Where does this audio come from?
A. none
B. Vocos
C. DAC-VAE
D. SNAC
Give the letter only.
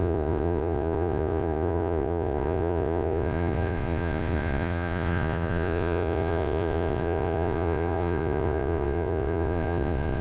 B